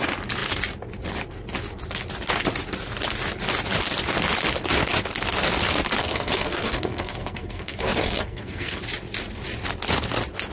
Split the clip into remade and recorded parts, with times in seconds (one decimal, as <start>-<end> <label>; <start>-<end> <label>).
0.0-6.0 recorded; 6.0-8.8 remade; 8.8-10.5 recorded